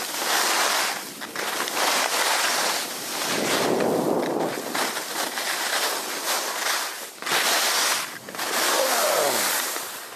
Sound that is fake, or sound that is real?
fake